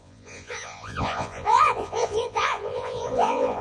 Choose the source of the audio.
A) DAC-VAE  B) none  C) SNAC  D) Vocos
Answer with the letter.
D